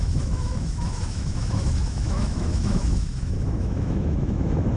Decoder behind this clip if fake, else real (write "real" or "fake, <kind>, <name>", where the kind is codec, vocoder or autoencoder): fake, autoencoder, DAC-VAE